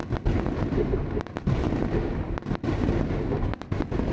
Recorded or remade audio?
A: recorded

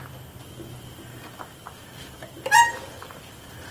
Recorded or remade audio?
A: recorded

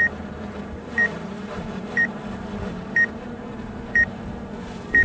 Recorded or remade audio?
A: remade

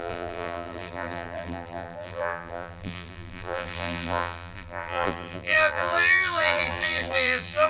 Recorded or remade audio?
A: remade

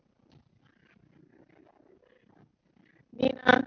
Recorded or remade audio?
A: remade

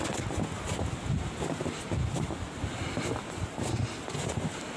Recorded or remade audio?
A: recorded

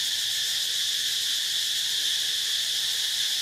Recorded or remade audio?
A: recorded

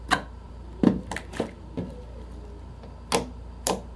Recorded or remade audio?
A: recorded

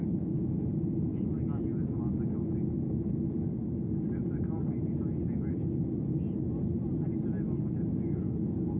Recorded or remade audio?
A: recorded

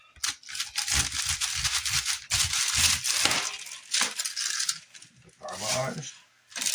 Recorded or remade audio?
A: recorded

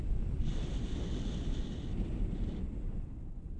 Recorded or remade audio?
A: recorded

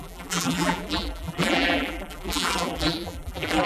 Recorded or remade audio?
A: remade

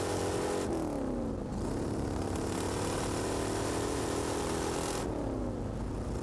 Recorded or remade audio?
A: recorded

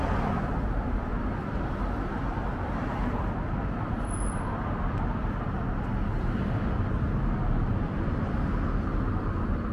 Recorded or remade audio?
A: recorded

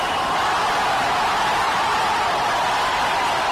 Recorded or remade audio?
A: recorded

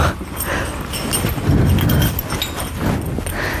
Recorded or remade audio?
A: recorded